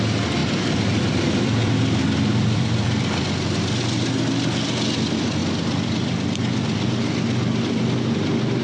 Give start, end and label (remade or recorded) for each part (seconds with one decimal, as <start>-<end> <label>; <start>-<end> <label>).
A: 0.0-0.4 recorded; 0.4-1.7 remade; 1.7-2.3 recorded; 2.3-3.2 remade; 3.2-8.6 recorded